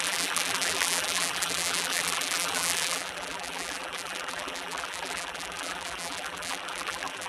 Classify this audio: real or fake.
fake